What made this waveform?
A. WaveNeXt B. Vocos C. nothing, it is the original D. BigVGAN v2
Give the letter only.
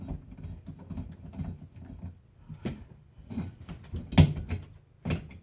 C